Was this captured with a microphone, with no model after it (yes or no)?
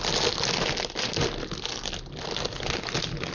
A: yes